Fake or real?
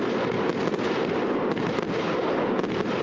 real